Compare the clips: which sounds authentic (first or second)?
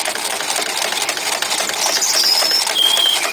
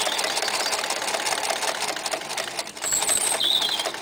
second